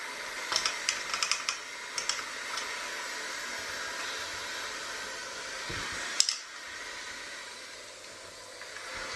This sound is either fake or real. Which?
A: real